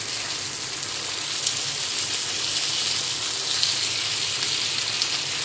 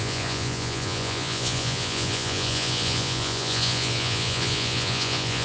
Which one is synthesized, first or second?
second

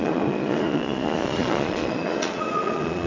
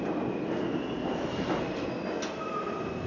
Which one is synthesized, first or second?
first